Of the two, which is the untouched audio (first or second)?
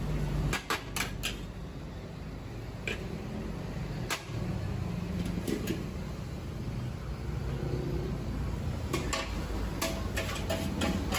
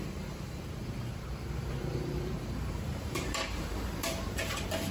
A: first